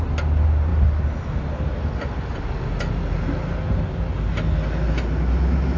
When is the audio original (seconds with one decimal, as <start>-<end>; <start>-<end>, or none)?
0.0-5.8